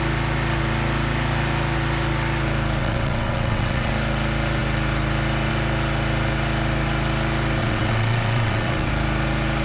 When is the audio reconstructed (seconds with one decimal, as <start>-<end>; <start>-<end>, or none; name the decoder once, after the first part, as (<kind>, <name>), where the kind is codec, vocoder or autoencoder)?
2.8-3.9 (vocoder, WaveNeXt); 7.6-8.9